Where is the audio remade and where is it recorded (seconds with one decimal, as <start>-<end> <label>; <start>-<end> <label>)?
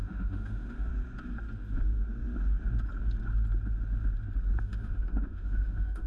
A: 0.0-0.9 remade; 0.9-4.6 recorded; 4.6-6.1 remade